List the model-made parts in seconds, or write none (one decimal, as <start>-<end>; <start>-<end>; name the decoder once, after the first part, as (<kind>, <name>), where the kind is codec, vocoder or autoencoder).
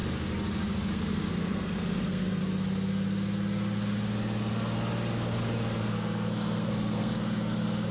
0.9-2.4 (codec, SNAC); 5.8-7.9